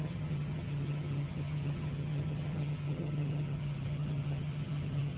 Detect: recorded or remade remade